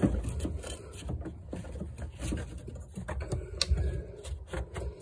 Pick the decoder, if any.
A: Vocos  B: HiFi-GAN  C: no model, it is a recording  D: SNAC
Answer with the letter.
C